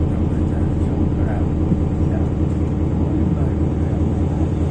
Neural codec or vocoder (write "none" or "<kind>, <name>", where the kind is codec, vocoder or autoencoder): none